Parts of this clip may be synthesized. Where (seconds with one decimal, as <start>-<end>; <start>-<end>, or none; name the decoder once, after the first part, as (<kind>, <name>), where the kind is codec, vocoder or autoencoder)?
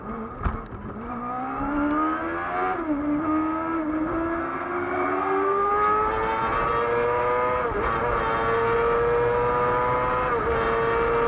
4.4-5.7 (codec, SNAC)